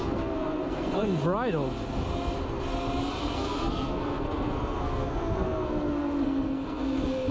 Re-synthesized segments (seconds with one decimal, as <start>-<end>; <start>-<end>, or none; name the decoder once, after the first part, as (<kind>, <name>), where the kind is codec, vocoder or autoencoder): 0.0-1.2 (codec, SNAC); 3.2-7.3